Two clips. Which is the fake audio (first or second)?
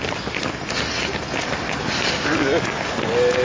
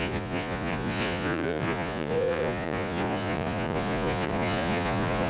second